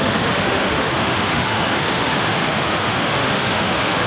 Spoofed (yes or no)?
yes